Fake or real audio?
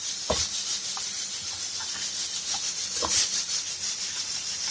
real